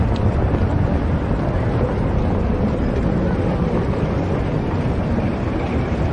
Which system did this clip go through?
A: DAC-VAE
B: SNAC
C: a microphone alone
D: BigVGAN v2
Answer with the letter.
C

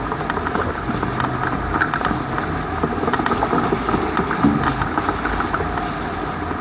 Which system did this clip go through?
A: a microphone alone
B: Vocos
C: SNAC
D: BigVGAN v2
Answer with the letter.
A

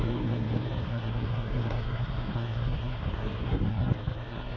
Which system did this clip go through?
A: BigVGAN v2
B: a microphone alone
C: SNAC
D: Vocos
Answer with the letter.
C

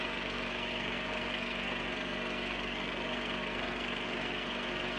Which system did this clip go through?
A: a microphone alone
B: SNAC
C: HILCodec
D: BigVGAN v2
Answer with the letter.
B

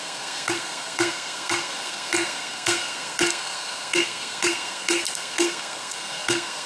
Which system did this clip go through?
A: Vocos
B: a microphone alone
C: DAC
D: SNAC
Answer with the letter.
D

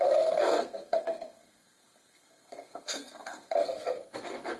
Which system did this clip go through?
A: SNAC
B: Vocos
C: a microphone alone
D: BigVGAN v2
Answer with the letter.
A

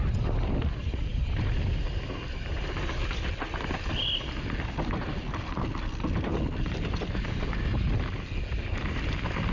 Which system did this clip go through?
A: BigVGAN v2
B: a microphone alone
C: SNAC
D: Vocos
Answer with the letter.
B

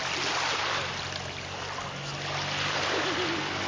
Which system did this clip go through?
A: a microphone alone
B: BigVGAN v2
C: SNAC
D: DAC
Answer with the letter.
A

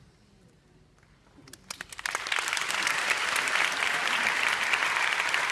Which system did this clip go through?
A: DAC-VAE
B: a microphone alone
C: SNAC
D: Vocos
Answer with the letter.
B